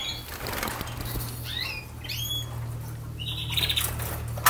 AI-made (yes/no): no